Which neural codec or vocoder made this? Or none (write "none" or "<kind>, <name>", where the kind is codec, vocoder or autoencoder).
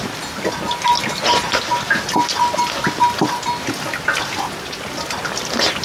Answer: none